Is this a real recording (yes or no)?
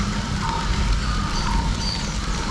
no